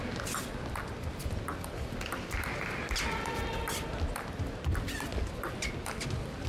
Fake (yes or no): no